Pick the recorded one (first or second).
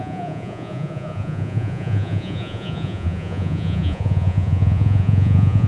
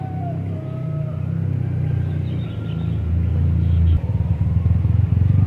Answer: second